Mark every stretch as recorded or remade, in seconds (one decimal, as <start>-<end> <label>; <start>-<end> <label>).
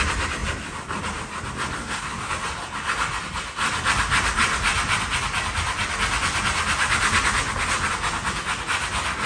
0.0-1.8 recorded; 1.8-2.3 remade; 2.3-9.3 recorded